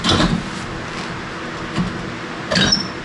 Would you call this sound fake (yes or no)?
no